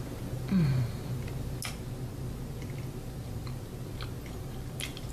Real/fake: real